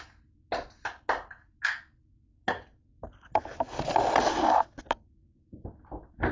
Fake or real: real